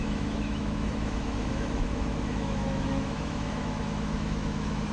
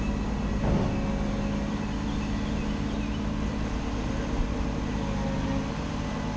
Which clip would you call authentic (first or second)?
second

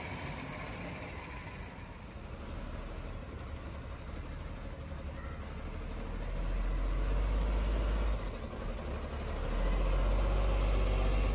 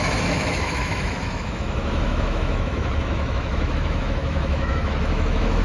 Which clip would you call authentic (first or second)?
first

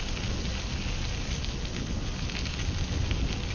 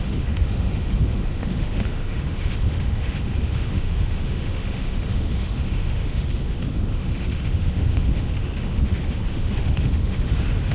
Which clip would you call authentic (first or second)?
first